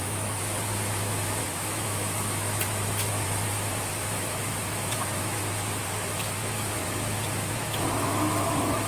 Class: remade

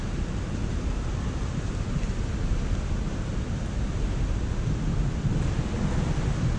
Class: recorded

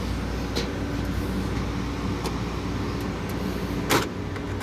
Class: recorded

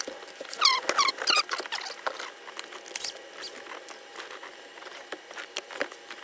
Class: recorded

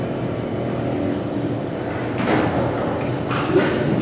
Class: recorded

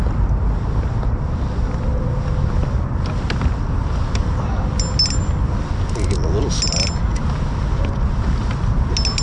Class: recorded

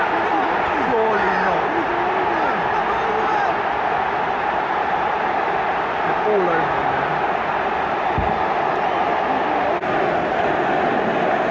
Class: recorded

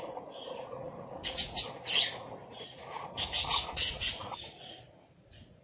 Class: remade